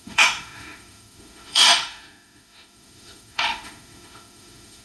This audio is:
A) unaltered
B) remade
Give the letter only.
B